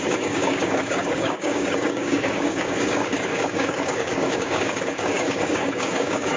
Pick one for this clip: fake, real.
fake